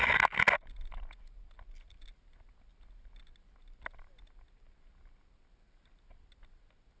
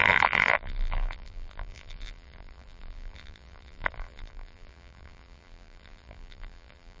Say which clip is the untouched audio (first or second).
first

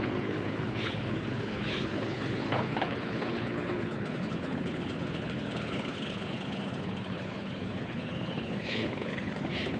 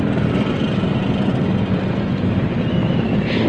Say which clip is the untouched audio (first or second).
second